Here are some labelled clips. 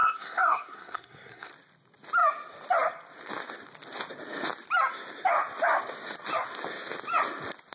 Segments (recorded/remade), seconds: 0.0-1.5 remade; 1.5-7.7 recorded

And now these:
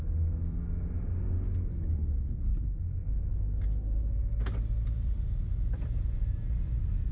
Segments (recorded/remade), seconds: 0.0-7.1 recorded

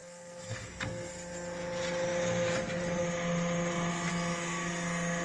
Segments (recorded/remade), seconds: 0.0-1.1 remade; 1.1-5.2 recorded